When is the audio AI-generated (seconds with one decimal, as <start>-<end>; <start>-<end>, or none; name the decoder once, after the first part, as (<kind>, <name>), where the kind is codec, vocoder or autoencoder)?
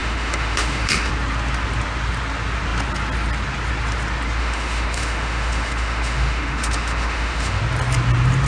0.0-1.1 (autoencoder, DAC-VAE); 4.4-7.6